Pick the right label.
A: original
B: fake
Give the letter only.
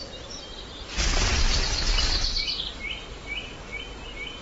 A